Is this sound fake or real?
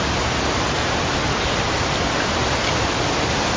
real